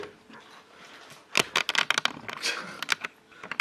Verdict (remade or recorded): recorded